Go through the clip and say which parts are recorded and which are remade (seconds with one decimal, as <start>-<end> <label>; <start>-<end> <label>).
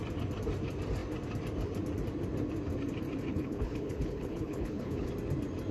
0.0-3.3 recorded; 3.3-5.1 remade; 5.1-5.7 recorded